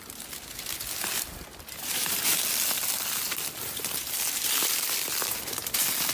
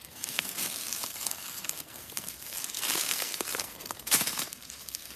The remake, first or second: second